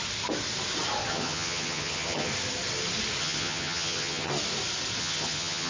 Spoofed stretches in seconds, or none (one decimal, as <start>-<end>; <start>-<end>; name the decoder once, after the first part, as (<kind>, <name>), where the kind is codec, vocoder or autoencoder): 1.1-2.3 (vocoder, HiFi-GAN); 3.2-4.3; 5.0-5.7